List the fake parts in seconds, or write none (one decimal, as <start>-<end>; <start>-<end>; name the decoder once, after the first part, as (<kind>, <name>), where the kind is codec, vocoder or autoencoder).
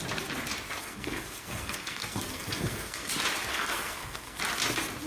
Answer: 0.8-3.1 (codec, SNAC); 3.5-4.4